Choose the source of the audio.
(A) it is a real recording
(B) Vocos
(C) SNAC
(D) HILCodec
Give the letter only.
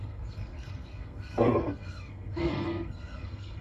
C